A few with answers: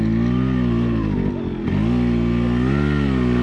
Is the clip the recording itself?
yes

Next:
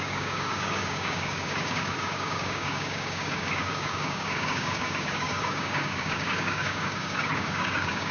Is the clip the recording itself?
no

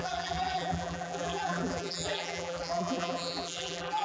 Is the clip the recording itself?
no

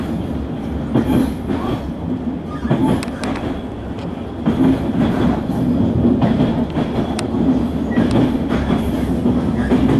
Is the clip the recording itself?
yes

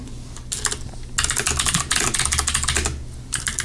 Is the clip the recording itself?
yes